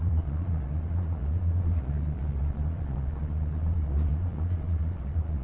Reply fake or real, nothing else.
fake